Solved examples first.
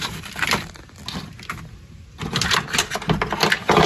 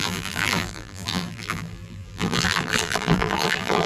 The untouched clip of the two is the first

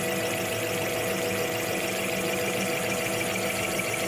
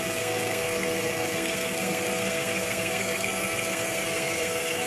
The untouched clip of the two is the first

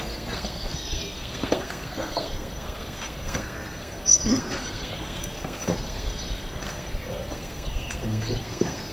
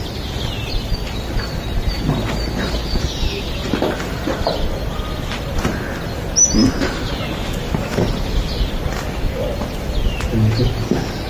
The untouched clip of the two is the second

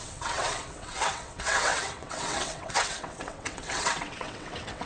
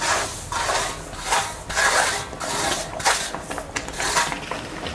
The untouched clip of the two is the second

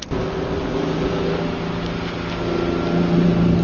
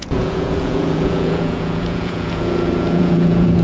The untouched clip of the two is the first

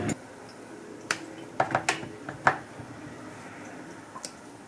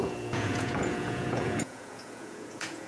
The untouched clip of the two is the first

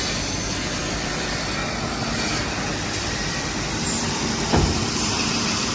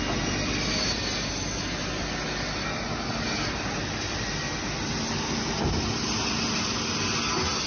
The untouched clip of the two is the second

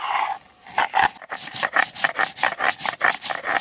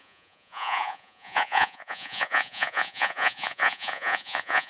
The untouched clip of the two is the first